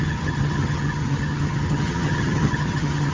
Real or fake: fake